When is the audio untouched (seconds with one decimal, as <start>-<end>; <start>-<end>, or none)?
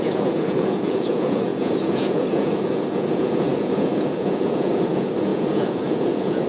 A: none